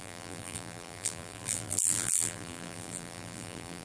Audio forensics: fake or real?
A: fake